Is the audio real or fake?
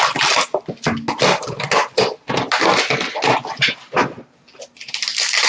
real